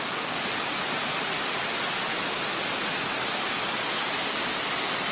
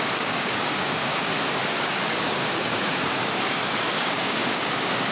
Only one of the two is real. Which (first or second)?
first